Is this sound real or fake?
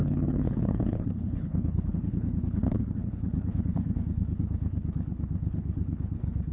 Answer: fake